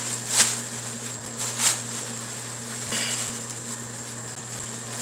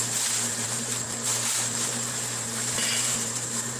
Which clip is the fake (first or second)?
second